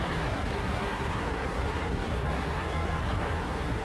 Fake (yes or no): yes